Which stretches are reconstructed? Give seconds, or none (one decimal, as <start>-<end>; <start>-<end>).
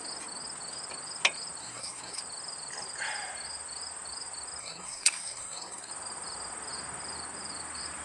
1.6-2.2; 4.6-5.9